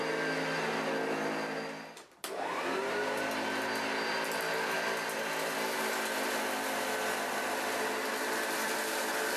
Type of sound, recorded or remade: recorded